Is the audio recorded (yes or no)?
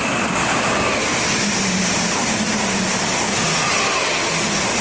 yes